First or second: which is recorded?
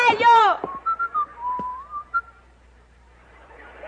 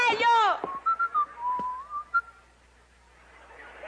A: second